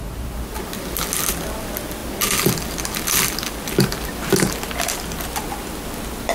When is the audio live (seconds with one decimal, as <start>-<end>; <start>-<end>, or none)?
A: 0.0-6.3